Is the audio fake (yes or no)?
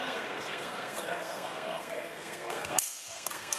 yes